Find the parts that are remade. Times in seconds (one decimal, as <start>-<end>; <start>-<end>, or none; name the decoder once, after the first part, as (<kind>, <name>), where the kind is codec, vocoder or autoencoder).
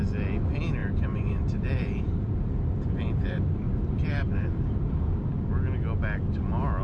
0.8-4.9 (vocoder, BigVGAN v2)